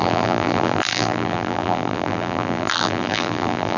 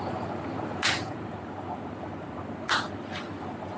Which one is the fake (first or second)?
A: first